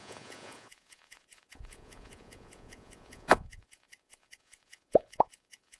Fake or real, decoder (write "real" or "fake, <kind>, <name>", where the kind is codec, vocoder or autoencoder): fake, vocoder, Vocos